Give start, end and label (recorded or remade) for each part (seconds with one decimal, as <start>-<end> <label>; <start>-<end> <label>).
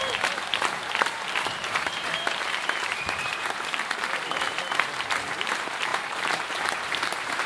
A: 0.0-7.5 remade